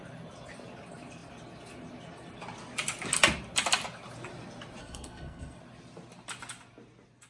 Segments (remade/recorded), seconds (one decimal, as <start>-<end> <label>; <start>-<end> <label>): 0.0-4.8 recorded; 4.8-5.6 remade; 5.6-7.3 recorded